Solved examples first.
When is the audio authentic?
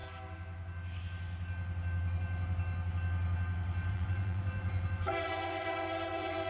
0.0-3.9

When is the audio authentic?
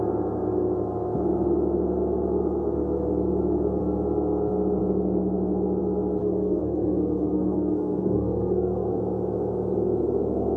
0.0-6.2; 9.0-10.6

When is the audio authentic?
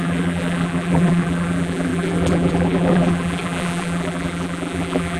none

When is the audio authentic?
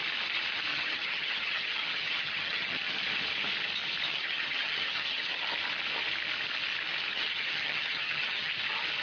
0.0-0.7; 2.9-4.1; 5.5-7.1; 8.5-9.0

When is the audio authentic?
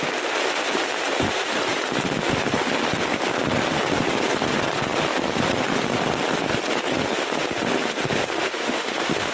0.0-8.2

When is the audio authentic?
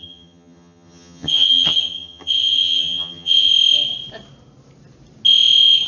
3.5-5.9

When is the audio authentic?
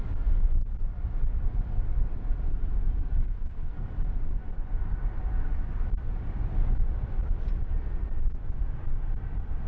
0.0-3.1; 3.9-9.7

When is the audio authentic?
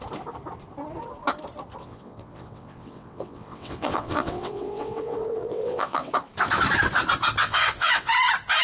0.0-1.8; 6.1-7.4; 8.1-8.6